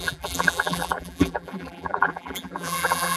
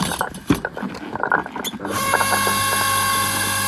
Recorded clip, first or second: second